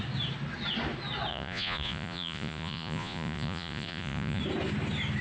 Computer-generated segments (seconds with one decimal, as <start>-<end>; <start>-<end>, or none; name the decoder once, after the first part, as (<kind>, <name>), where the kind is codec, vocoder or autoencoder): 1.3-4.4 (vocoder, Vocos)